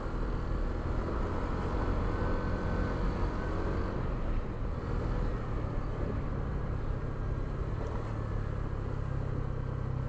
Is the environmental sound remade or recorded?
recorded